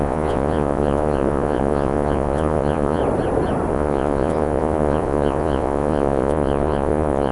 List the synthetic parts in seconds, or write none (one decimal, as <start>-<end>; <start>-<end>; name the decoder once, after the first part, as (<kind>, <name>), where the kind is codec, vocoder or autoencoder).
0.0-3.0 (vocoder, Vocos); 3.7-7.3